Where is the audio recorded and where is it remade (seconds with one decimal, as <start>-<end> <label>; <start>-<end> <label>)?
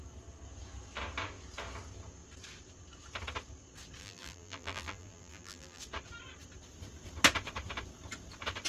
0.0-4.0 recorded; 4.0-5.8 remade; 5.8-8.7 recorded